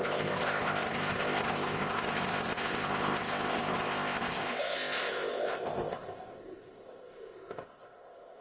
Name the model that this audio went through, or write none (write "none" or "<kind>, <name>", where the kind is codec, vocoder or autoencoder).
codec, ZipCodec